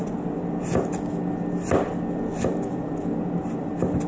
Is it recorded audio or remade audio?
recorded